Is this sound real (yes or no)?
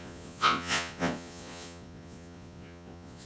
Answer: no